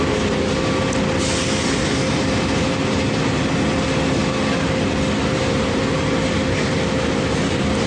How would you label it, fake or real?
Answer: real